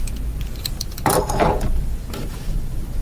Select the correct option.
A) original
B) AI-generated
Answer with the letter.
B